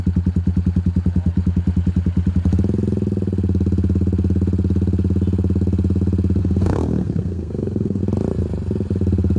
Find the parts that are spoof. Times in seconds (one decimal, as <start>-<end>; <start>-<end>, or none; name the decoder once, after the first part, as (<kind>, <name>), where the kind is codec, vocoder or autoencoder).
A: 6.4-8.0 (codec, SNAC)